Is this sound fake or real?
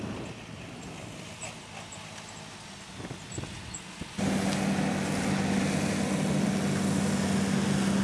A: real